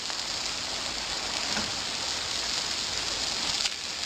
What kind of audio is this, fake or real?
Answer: real